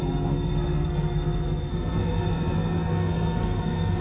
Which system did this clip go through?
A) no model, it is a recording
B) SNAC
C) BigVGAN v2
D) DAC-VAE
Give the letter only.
B